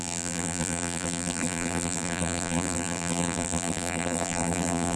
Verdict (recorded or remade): remade